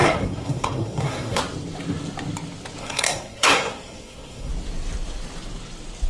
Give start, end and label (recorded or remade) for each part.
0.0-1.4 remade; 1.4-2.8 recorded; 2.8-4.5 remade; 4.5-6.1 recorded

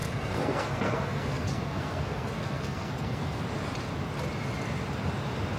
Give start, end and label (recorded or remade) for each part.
0.0-3.4 remade; 3.4-5.6 recorded